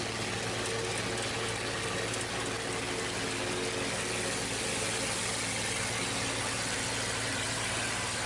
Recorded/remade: recorded